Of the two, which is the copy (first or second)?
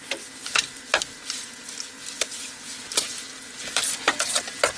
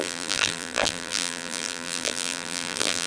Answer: second